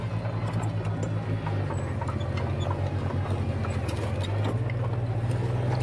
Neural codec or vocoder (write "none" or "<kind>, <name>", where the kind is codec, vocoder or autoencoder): none